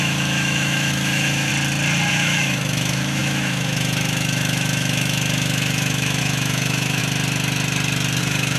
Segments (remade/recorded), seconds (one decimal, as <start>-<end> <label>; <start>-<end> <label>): 0.0-1.5 remade; 1.5-2.1 recorded; 2.1-7.0 remade; 7.0-8.2 recorded; 8.2-8.6 remade